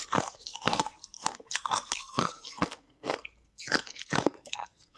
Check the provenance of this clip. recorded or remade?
remade